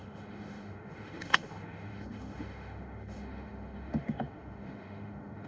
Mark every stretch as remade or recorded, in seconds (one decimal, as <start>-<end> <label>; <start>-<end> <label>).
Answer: 0.0-5.5 remade